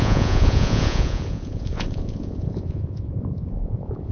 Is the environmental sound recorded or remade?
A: remade